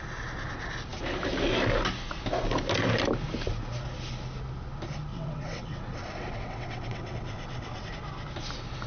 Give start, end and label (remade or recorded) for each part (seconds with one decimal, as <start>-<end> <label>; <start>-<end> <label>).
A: 0.0-5.1 recorded; 5.1-7.9 remade; 7.9-8.9 recorded